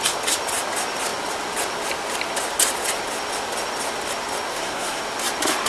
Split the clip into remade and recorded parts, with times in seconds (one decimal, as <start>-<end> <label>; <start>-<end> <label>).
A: 0.0-4.5 recorded; 4.5-5.0 remade; 5.0-5.7 recorded